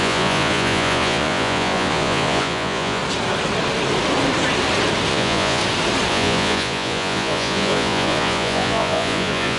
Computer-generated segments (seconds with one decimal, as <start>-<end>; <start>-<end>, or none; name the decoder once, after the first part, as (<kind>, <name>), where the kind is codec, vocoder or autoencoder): 0.0-3.0 (vocoder, Vocos); 5.1-5.6; 6.1-9.6